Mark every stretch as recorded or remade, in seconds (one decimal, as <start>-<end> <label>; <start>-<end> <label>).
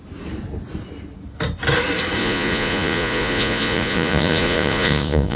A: 0.0-2.2 recorded; 2.2-5.4 remade